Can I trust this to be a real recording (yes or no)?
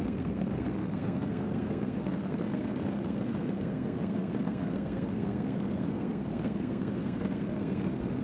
no